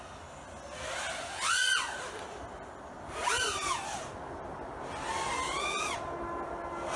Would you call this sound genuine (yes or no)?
yes